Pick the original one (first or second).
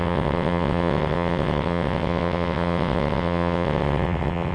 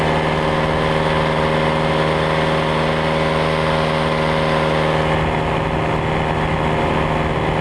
second